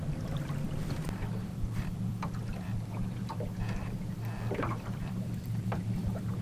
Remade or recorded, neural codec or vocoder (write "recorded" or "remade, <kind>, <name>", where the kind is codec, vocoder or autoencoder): remade, vocoder, BigVGAN v2